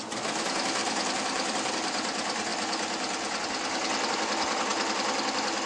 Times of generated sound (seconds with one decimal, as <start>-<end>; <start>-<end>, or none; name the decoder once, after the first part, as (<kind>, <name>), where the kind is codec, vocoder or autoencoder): 0.8-1.7 (vocoder, BigVGAN v2)